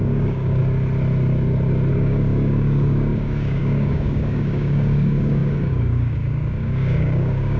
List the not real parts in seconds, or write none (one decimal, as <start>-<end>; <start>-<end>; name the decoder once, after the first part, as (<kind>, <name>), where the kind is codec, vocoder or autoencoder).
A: 0.0-0.6 (codec, DAC); 1.9-7.6